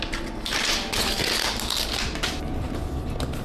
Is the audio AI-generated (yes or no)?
no